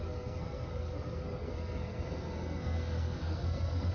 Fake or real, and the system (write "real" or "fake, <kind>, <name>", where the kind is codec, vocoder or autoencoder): fake, codec, SNAC